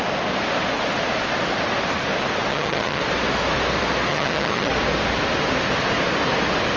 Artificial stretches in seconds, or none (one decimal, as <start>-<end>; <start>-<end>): 2.5-3.0; 4.1-4.7